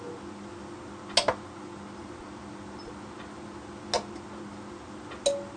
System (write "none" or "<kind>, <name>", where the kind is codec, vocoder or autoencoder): none